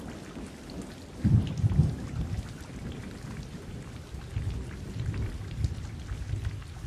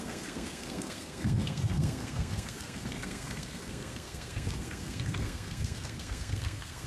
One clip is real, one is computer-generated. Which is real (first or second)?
first